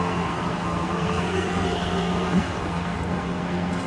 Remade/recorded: remade